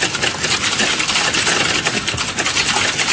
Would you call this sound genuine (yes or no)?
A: yes